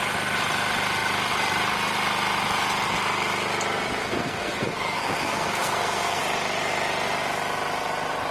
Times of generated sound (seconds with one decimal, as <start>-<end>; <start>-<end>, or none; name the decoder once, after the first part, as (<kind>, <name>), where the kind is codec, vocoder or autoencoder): 4.0-6.2 (codec, SNAC)